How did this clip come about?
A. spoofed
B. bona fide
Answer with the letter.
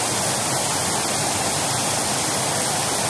B